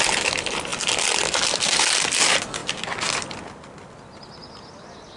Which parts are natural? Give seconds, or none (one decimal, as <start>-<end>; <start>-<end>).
0.0-5.2